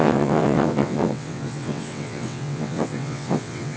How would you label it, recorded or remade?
remade